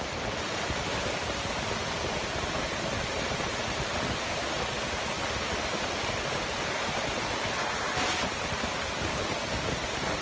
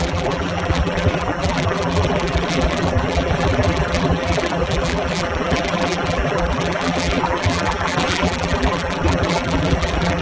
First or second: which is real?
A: first